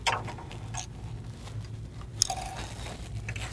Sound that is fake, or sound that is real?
real